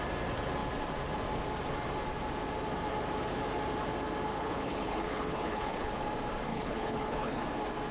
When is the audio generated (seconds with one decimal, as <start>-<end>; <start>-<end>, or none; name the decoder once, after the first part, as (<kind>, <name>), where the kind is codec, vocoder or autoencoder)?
4.3-5.9 (codec, HILCodec); 6.5-7.4